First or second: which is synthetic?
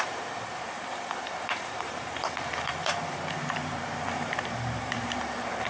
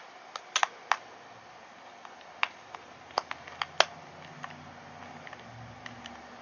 first